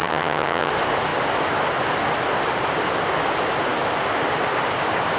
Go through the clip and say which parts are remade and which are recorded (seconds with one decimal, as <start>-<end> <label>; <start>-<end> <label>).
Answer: 0.0-0.7 remade; 0.7-5.2 recorded